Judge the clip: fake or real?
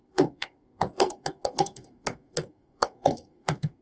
fake